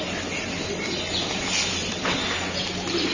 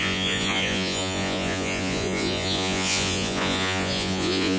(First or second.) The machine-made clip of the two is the second